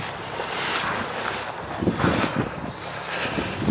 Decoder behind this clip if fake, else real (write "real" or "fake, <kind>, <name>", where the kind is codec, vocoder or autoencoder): real